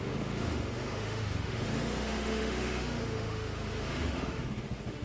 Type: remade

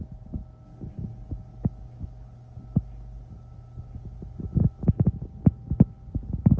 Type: recorded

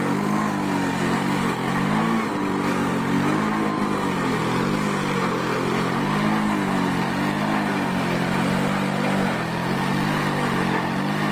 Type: recorded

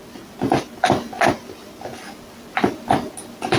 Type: recorded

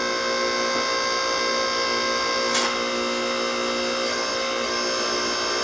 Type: recorded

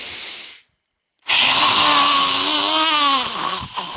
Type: recorded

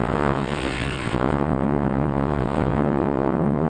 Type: remade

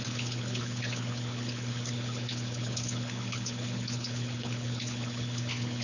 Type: remade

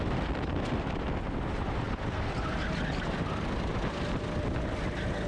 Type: recorded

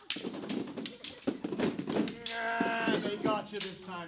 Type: recorded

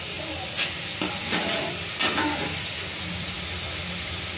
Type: recorded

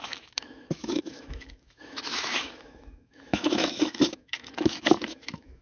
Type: remade